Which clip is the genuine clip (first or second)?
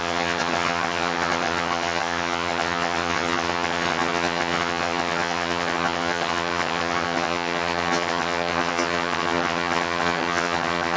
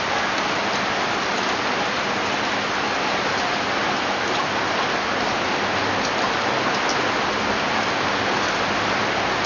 second